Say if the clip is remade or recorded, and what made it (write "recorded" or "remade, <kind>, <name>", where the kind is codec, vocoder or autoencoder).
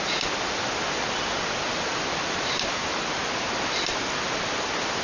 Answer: recorded